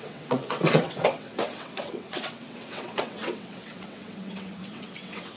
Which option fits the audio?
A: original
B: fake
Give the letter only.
B